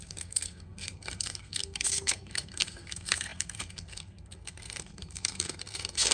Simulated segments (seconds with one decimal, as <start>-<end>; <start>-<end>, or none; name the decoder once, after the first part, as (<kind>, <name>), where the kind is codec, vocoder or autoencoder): 0.0-6.1 (codec, SNAC)